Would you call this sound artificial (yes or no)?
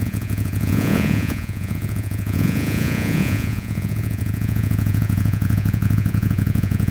yes